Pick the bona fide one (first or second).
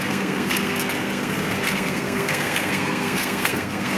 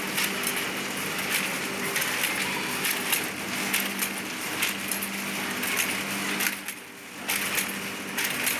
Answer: second